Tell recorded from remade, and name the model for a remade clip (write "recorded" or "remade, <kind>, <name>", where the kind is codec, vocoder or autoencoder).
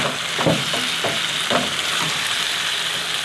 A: recorded